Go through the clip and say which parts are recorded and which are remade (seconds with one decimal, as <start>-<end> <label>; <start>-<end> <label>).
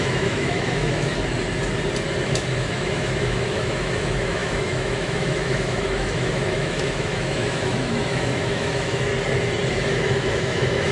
0.0-1.1 remade; 1.1-2.2 recorded; 2.2-9.1 remade; 9.1-9.7 recorded; 9.7-10.9 remade